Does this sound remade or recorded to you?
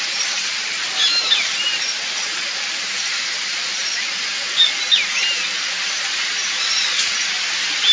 recorded